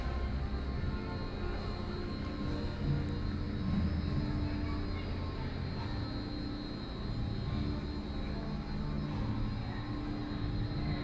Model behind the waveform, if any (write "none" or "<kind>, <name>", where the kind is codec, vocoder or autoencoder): none